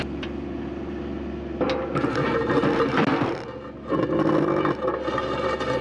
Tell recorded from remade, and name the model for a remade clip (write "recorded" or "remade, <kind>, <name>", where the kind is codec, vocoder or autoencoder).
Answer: recorded